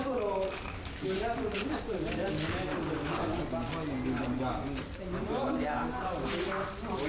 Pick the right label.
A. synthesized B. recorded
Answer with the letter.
B